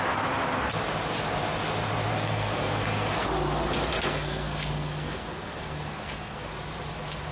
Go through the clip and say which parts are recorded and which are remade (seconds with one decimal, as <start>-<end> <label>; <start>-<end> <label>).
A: 0.0-2.1 recorded; 2.1-3.3 remade; 3.3-3.9 recorded; 3.9-6.5 remade; 6.5-7.3 recorded